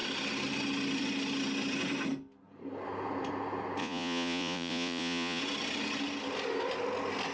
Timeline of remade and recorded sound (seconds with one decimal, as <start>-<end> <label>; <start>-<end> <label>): 0.0-3.8 recorded; 3.8-5.4 remade; 5.4-7.3 recorded